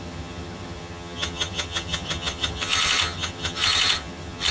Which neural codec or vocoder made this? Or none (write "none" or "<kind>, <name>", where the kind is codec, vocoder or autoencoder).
vocoder, HiFi-GAN